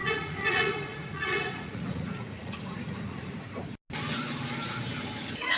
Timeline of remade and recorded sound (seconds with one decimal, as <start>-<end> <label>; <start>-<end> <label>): 0.0-3.4 remade; 3.4-5.6 recorded